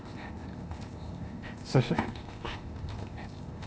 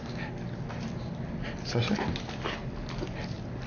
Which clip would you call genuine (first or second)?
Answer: second